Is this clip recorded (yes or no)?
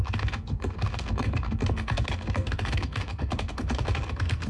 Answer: no